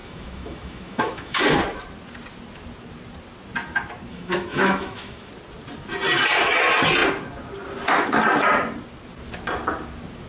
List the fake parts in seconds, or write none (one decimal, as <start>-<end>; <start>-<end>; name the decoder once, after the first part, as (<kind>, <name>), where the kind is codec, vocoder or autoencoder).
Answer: 0.0-1.4 (autoencoder, DAC-VAE); 4.1-5.3